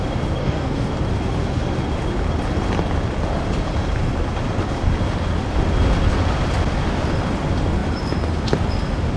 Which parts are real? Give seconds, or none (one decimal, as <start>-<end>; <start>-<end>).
0.0-0.4; 0.9-9.2